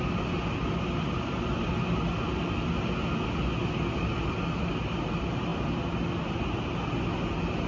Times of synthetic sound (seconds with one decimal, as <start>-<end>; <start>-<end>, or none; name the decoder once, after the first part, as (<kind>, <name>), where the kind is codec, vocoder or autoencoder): none